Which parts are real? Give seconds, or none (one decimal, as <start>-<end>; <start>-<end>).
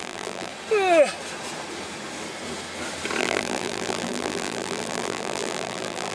0.5-3.2